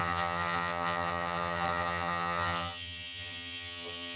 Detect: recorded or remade remade